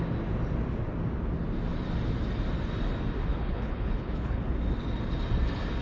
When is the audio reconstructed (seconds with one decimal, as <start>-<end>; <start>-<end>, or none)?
3.3-4.4

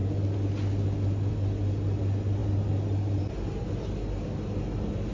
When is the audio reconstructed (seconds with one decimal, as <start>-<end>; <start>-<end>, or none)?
none

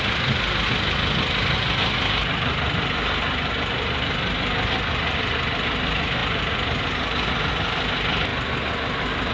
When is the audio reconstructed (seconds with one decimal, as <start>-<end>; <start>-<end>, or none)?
none

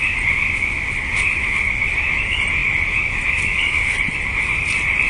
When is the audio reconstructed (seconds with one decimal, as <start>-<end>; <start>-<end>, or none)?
none

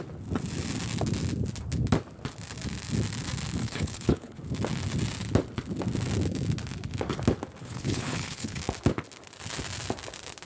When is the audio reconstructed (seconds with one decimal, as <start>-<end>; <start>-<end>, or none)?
3.6-4.4; 7.6-8.6

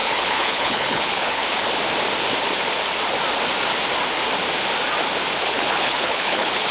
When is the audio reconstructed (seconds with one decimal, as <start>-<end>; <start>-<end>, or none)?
0.0-1.4; 5.4-6.7

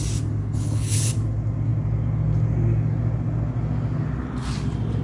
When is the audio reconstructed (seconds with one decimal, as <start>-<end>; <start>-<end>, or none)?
0.4-1.1

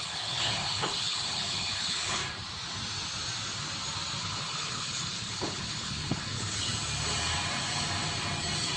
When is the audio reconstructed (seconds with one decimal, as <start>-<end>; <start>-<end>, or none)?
0.0-2.2; 4.2-6.7